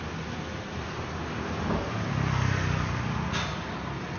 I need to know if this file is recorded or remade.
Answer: recorded